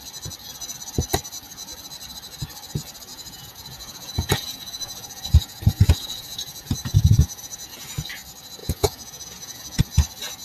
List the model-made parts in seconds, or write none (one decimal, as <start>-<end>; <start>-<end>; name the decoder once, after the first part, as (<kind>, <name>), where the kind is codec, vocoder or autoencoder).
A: 3.1-7.9 (vocoder, Vocos); 8.6-9.8

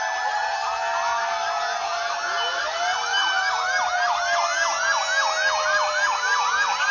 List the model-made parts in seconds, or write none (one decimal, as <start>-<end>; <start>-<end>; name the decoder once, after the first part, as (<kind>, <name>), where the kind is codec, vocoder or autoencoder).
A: none